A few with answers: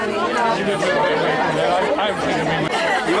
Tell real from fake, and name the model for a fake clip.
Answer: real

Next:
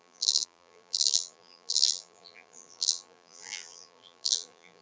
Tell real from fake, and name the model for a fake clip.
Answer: fake, vocoder, BigVGAN v2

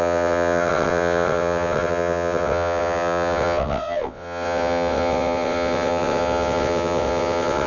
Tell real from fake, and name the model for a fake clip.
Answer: fake, vocoder, WaveNeXt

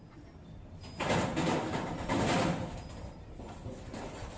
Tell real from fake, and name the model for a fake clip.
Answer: real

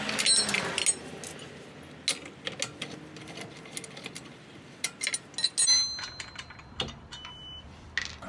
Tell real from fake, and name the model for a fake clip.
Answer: real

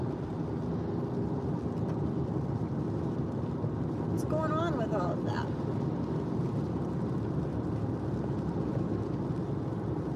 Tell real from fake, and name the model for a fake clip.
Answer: real